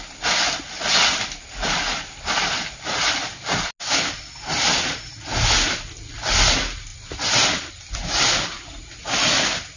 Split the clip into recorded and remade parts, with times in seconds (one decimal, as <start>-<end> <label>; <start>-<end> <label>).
0.0-9.8 recorded